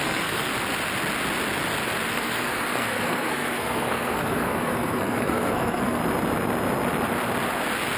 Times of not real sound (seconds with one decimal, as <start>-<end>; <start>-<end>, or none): 0.0-0.5; 2.1-6.0